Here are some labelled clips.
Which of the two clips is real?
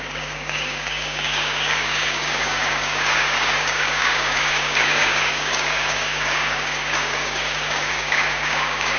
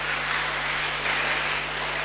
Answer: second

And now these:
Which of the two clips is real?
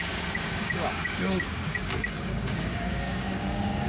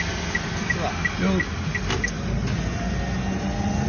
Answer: second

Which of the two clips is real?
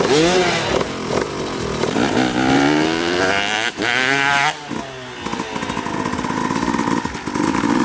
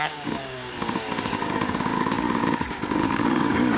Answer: first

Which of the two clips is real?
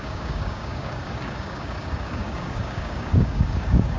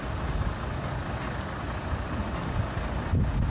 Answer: second